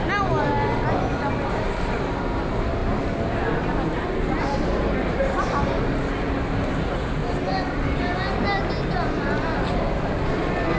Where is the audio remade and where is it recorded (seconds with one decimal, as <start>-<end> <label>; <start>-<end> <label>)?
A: 0.0-10.8 recorded